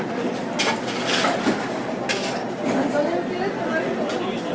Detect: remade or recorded recorded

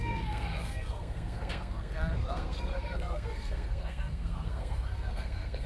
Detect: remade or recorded remade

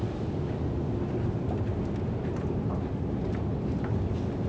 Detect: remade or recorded recorded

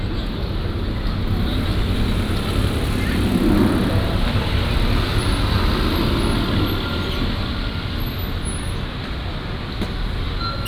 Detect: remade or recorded recorded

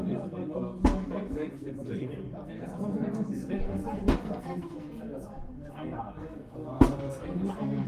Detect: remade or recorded remade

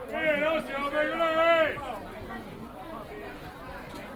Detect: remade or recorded recorded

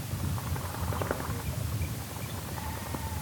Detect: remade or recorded recorded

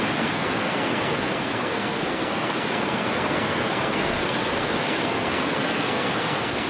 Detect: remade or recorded remade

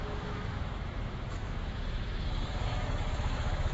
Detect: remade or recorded remade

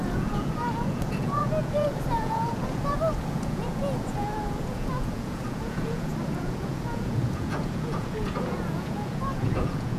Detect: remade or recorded remade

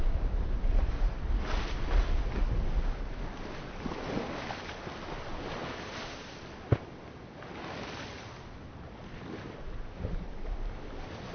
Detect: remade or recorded recorded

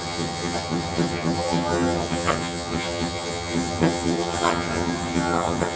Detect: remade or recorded remade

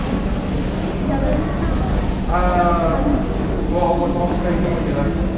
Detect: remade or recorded recorded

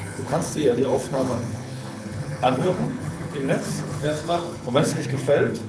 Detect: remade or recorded remade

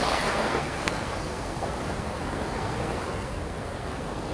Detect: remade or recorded remade